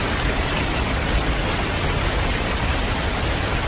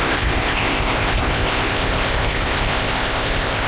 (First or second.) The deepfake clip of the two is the second